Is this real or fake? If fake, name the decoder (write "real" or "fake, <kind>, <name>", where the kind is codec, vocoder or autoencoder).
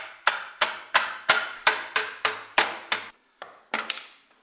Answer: real